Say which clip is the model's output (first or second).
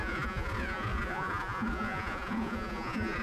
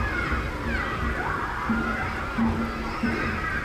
first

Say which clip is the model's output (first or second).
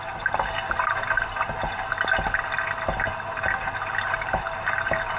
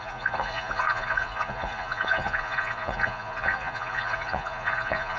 second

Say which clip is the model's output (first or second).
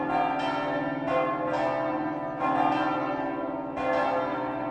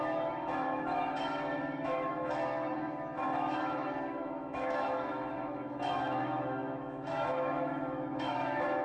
second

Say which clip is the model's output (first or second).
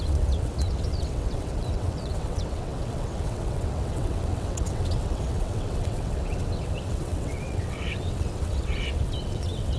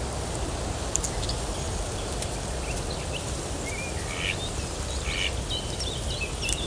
first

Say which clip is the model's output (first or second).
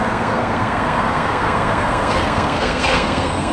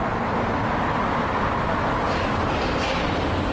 first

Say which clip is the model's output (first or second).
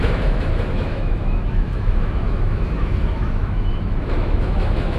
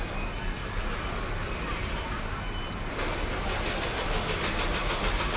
first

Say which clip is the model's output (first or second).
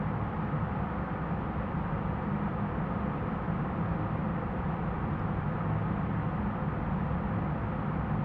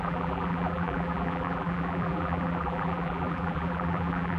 second